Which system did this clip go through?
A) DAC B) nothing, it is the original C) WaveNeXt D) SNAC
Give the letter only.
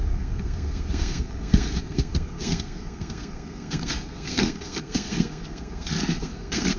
D